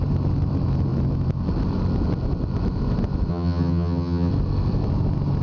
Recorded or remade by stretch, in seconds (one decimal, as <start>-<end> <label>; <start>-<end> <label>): 0.0-3.3 recorded; 3.3-4.3 remade; 4.3-5.4 recorded